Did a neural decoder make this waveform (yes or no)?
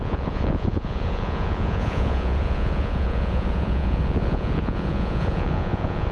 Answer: yes